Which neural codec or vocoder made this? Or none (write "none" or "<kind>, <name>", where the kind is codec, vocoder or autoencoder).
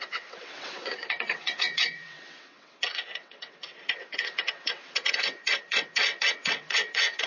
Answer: vocoder, WaveNeXt